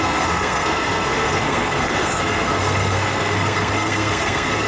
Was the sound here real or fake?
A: fake